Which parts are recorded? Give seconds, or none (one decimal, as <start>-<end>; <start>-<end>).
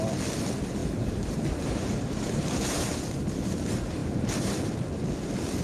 0.0-0.8; 3.1-4.0; 4.6-5.6